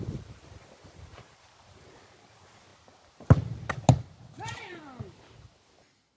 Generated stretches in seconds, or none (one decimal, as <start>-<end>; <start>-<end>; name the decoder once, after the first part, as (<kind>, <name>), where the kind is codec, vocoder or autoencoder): none